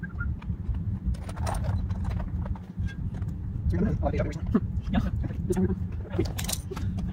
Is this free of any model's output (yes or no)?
yes